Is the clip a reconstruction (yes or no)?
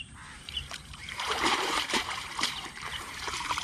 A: yes